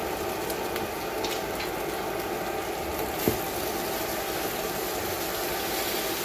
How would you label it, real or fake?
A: real